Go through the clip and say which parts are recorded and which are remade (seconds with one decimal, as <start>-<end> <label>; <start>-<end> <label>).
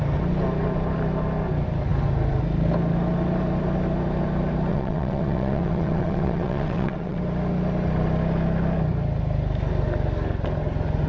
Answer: 0.0-4.7 recorded; 4.7-7.2 remade; 7.2-11.1 recorded